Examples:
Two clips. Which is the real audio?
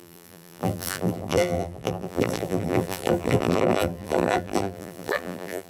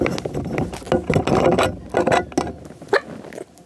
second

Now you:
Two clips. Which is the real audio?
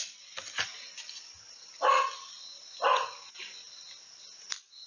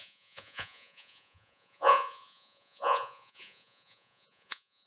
first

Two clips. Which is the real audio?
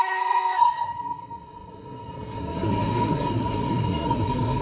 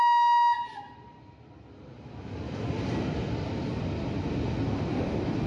second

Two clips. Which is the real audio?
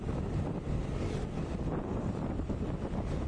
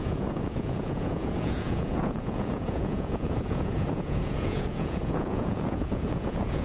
first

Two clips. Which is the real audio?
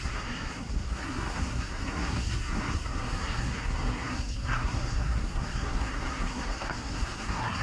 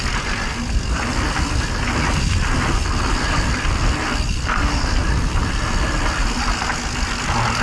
second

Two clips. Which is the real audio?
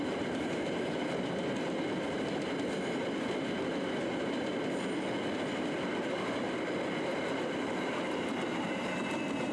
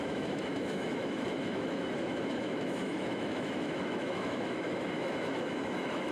first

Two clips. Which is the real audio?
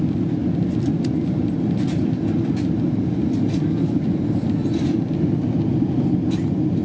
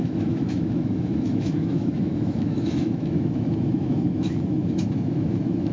first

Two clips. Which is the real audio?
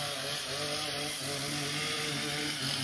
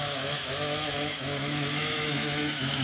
first